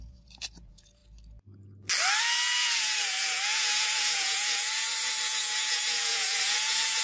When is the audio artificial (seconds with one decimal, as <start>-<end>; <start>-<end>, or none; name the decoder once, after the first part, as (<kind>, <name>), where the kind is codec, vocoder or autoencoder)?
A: 0.0-1.0 (vocoder, Vocos); 2.2-7.0